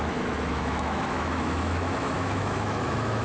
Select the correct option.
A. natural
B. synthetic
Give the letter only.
B